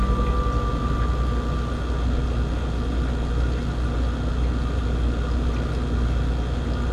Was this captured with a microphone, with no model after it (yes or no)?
yes